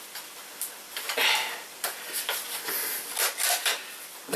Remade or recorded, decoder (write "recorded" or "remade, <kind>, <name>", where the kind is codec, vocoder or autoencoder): recorded